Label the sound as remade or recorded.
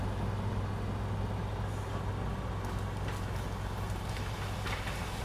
recorded